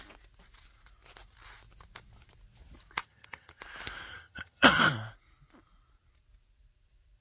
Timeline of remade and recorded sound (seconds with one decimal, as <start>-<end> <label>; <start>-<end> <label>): 0.0-3.0 recorded; 3.0-3.6 remade; 3.6-4.1 recorded; 4.1-4.8 remade; 4.8-7.2 recorded